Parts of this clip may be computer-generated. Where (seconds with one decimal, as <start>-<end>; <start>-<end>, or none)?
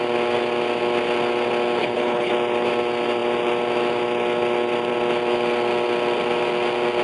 1.8-2.3